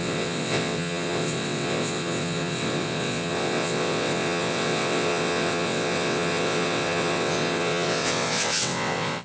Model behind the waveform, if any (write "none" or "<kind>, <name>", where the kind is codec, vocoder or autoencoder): vocoder, WaveNeXt